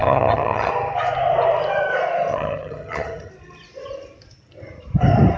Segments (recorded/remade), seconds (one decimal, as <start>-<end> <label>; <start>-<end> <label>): 0.0-0.7 remade; 0.7-2.3 recorded; 2.3-3.3 remade; 3.3-5.4 recorded